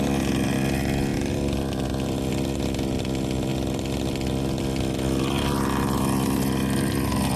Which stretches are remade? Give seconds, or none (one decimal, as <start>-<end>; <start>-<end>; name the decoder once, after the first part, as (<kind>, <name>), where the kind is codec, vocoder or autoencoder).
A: 1.1-2.3 (vocoder, BigVGAN v2)